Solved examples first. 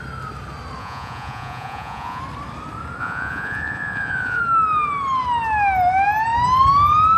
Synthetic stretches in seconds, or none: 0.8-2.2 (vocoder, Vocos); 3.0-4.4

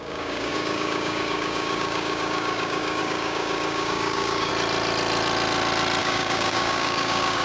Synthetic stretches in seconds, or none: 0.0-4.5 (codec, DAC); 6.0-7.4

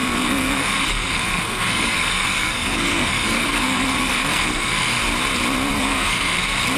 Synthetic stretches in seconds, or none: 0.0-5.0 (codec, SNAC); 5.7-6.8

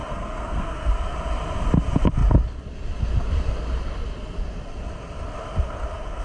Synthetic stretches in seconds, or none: 0.0-0.9 (codec, SNAC)

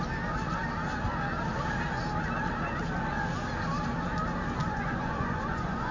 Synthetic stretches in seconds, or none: 4.6-5.9 (vocoder, Vocos)